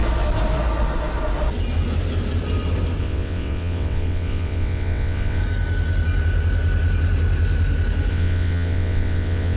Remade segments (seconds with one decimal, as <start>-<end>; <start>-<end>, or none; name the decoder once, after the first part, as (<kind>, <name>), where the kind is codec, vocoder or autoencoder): 3.0-5.4 (vocoder, WaveNeXt); 8.1-9.6